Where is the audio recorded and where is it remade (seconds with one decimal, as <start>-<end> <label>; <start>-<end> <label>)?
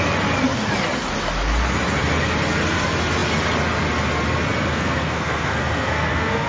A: 0.0-4.7 recorded; 4.7-6.5 remade